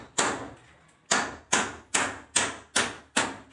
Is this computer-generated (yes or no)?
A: no